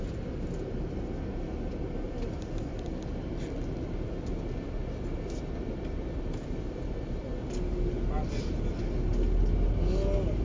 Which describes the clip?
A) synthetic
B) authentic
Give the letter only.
B